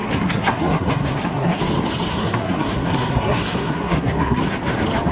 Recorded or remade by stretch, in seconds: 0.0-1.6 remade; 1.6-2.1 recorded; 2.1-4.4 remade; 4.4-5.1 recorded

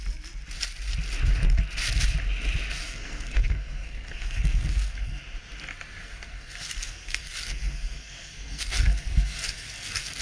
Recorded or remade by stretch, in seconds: 0.0-2.8 recorded; 2.8-5.2 remade; 5.2-6.0 recorded; 6.0-10.2 remade

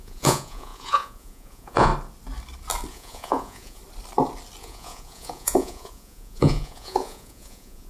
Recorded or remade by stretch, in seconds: 0.0-1.9 remade; 1.9-2.9 recorded; 2.9-3.8 remade; 3.8-4.6 recorded; 4.6-7.9 remade

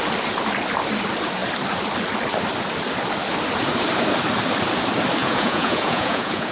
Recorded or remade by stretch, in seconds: 0.0-5.2 recorded; 5.2-6.5 remade

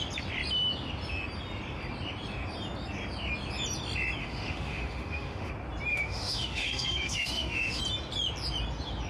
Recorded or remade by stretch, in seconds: 0.0-4.2 recorded; 4.2-5.5 remade; 5.5-5.9 recorded; 5.9-7.8 remade; 7.8-9.1 recorded

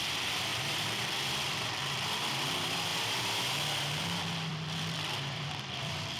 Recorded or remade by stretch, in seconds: 0.0-2.9 remade; 2.9-4.0 recorded; 4.0-6.2 remade